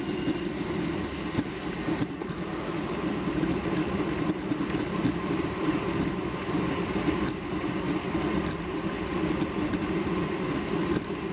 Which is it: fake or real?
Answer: real